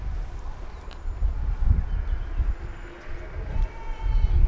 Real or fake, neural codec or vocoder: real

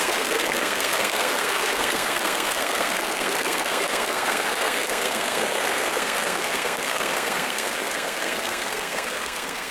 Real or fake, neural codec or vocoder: fake, codec, SNAC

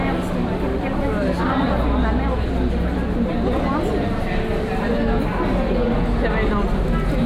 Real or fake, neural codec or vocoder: real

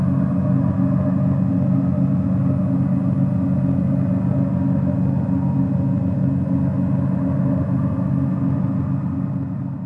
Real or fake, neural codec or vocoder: real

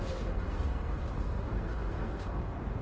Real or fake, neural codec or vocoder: fake, codec, SNAC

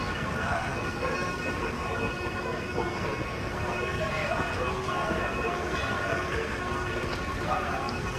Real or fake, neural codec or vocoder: fake, codec, SNAC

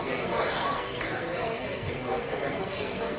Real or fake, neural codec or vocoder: fake, codec, SNAC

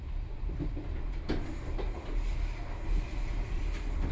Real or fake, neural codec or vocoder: real